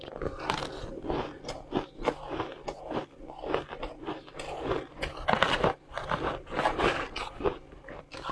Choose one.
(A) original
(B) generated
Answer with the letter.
A